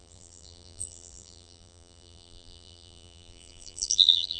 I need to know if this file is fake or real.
fake